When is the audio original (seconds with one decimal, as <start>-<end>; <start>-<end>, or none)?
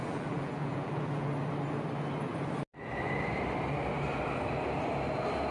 1.3-5.5